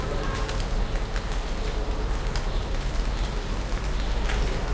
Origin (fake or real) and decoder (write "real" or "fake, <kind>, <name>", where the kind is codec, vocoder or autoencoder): real